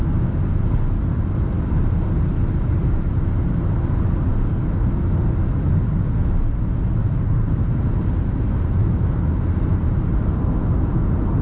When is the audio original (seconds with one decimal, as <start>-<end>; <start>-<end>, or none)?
0.0-7.0; 7.9-8.8; 10.5-11.4